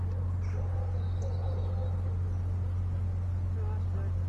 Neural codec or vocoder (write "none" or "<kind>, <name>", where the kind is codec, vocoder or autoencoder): none